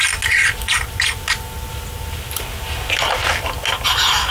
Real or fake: real